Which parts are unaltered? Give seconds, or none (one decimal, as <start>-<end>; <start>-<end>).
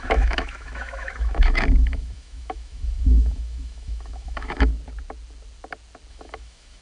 4.7-6.1